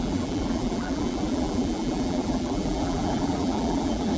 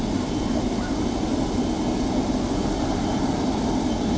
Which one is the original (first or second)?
second